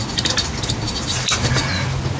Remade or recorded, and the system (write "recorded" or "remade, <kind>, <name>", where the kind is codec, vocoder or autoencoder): recorded